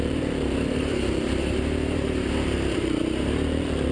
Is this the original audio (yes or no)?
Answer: no